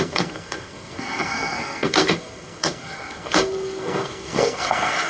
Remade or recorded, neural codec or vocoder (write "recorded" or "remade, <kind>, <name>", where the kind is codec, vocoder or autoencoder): remade, codec, SNAC